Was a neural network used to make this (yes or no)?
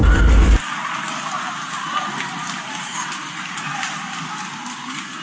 no